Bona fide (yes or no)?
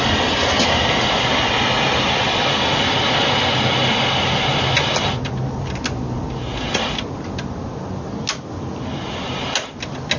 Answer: yes